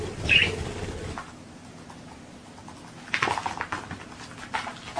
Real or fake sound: real